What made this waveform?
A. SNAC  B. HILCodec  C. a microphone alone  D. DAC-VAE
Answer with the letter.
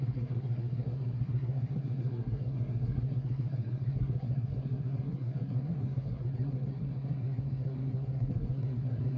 A